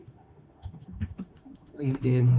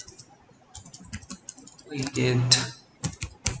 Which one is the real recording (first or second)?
second